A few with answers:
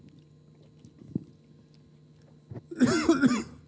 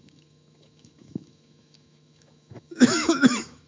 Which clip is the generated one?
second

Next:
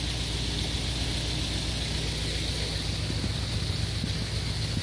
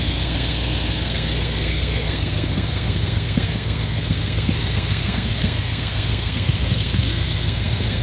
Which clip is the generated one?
second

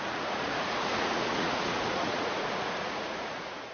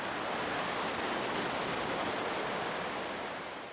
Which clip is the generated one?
first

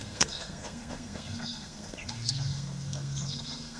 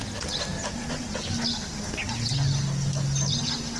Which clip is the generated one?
first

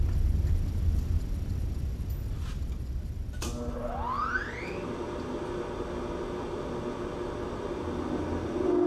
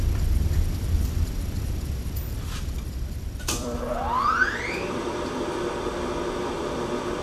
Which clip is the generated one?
second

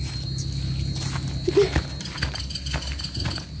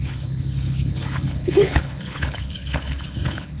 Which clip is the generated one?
second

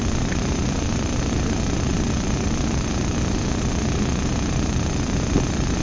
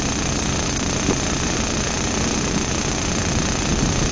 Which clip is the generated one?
first